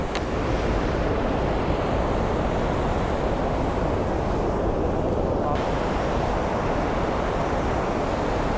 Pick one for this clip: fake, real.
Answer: real